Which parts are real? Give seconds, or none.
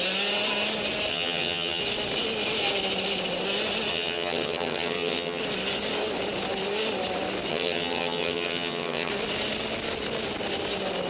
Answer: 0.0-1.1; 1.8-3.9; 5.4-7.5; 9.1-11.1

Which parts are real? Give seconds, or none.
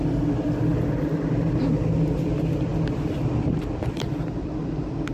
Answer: 0.0-5.1